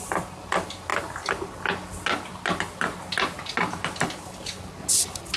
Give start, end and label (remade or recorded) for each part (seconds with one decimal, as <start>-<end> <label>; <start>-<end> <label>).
0.0-5.4 recorded